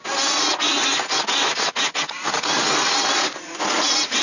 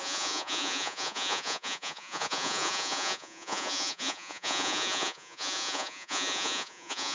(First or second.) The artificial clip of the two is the second